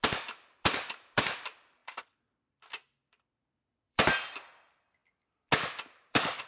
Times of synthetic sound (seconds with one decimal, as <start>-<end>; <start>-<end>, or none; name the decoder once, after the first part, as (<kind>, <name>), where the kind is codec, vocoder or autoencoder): 0.0-5.0 (vocoder, BigVGAN v2); 6.1-6.5